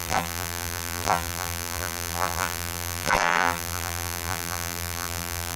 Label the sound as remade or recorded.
remade